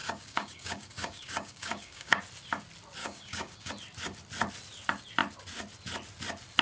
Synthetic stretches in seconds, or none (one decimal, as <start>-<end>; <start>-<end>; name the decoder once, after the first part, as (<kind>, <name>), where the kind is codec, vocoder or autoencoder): 0.0-2.2 (codec, DAC); 3.0-3.7